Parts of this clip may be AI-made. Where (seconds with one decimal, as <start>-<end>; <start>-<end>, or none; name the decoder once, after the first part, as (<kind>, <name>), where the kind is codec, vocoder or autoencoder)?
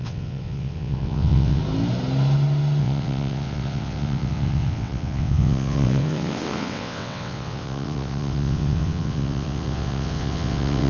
0.0-1.6 (vocoder, WaveNeXt); 2.8-10.9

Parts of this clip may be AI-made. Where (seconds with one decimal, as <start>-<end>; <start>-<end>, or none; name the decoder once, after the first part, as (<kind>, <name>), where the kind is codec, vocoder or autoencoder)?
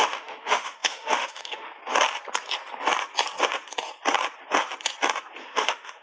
0.0-1.8 (autoencoder, DAC-VAE); 5.4-6.0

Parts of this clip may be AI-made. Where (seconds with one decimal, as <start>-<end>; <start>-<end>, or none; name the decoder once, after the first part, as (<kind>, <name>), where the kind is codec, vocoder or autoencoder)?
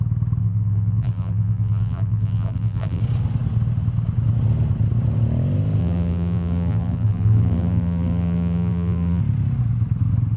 0.4-3.0 (vocoder, BigVGAN v2); 5.8-9.2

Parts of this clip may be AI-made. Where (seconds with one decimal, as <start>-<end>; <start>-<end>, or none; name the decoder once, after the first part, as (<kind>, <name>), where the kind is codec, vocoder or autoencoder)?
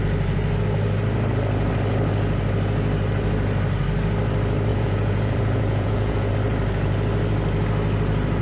4.7-6.3 (vocoder, Vocos)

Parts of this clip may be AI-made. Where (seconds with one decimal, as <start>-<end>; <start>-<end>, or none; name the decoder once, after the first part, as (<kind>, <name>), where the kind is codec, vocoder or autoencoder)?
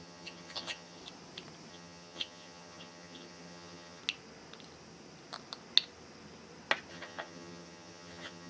0.0-1.0 (vocoder, HiFi-GAN); 1.7-4.0; 6.9-8.5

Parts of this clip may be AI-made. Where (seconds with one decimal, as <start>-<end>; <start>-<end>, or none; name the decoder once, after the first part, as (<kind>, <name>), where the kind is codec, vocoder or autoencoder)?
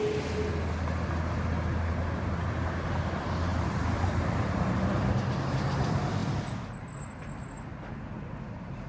3.5-5.8 (vocoder, BigVGAN v2); 7.7-8.9